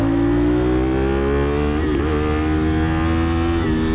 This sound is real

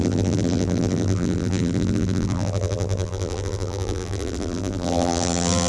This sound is fake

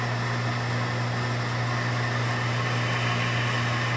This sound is real